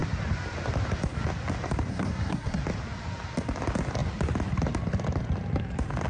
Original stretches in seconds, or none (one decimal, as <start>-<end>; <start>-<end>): 0.0-1.9; 2.6-6.1